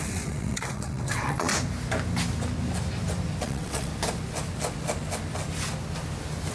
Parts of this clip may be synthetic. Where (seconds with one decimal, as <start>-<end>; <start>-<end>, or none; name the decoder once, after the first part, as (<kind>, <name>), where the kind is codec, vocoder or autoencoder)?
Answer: 0.0-1.5 (vocoder, WaveNeXt); 3.4-3.9